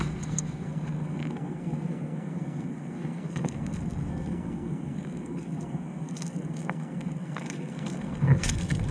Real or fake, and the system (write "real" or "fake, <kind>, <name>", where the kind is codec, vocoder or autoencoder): fake, codec, SNAC